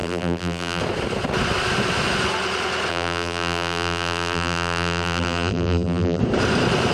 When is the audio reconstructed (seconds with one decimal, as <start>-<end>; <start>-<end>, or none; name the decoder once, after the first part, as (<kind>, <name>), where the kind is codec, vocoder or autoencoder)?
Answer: 0.0-0.8 (vocoder, BigVGAN v2); 2.9-6.2